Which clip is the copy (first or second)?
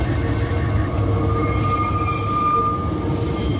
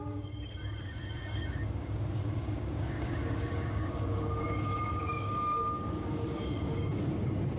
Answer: second